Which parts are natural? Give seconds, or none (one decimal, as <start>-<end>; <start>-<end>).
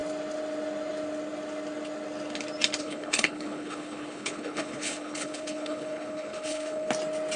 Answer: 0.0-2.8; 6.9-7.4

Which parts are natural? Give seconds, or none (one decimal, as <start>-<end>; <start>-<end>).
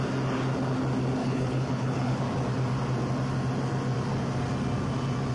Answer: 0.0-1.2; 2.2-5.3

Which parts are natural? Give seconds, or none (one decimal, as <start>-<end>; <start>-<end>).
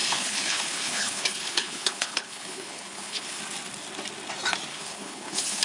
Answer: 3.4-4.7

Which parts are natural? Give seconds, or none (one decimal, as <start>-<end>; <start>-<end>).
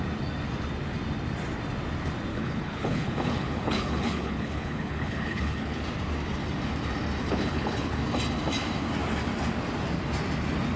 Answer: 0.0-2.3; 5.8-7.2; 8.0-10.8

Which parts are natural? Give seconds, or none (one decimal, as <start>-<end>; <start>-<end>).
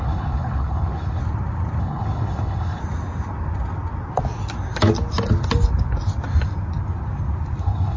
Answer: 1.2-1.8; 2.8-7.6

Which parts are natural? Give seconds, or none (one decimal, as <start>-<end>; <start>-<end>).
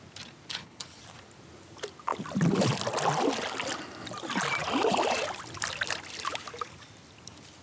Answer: 0.0-0.5; 1.0-7.6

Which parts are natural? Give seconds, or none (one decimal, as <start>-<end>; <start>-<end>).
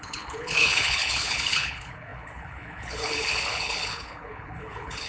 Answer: none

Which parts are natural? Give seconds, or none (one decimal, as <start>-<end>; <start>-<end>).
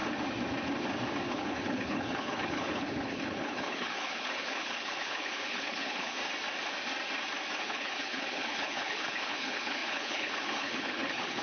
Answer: 0.0-1.3; 6.2-7.6